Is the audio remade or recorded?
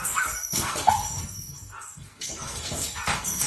remade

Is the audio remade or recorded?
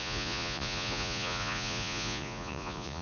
remade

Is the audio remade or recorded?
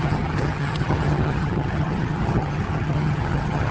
remade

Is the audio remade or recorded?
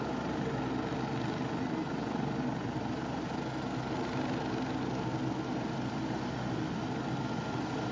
recorded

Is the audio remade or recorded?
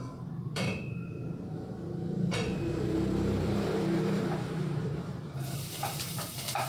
remade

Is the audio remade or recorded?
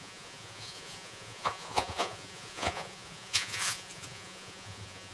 remade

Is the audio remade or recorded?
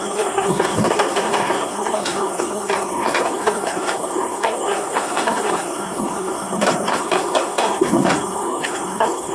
remade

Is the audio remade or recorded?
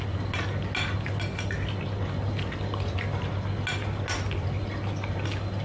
recorded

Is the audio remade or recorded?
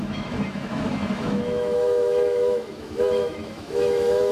remade